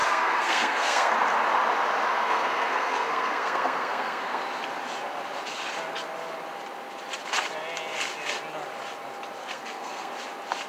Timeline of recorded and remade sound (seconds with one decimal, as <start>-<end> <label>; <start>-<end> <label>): 0.0-1.1 remade; 1.1-2.1 recorded; 2.1-4.4 remade; 4.4-9.4 recorded; 9.4-10.1 remade; 10.1-10.7 recorded